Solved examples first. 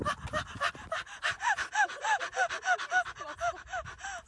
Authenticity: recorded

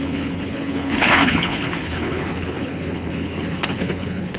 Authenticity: remade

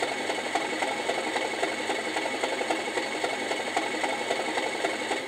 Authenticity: recorded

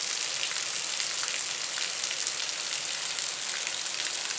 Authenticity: recorded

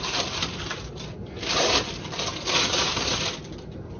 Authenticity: recorded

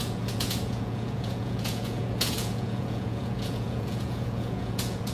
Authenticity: remade